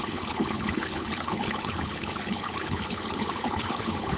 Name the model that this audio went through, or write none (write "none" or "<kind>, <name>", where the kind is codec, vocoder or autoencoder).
codec, HILCodec